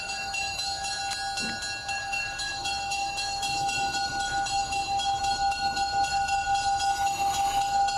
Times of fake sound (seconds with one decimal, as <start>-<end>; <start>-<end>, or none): 0.0-1.0; 1.9-8.0

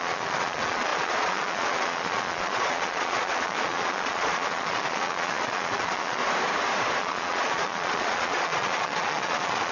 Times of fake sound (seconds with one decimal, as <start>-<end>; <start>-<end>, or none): 0.0-6.2; 7.0-9.7

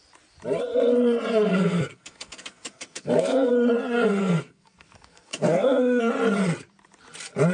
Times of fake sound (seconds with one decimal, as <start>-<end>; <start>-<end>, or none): 1.5-3.5; 4.2-6.0

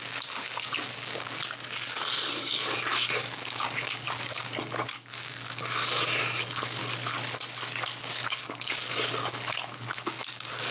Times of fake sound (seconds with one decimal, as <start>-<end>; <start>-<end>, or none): 0.0-6.8; 8.0-10.7

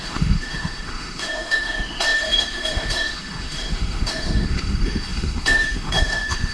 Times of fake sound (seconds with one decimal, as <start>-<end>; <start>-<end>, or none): 0.0-6.5